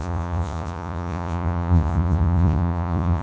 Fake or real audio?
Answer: fake